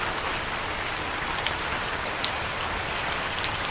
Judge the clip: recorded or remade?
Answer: recorded